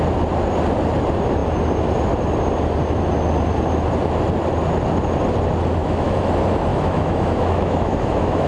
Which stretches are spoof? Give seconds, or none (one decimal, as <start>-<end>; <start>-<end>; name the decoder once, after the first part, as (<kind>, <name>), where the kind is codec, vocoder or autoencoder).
5.8-6.3 (autoencoder, DAC-VAE); 6.7-8.5